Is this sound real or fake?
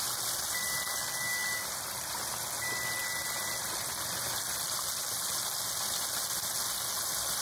real